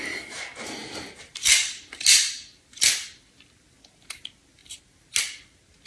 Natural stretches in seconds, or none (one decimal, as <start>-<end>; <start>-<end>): 0.0-5.9